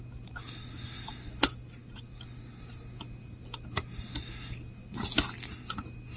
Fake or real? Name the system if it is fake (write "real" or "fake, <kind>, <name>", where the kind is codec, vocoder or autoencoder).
real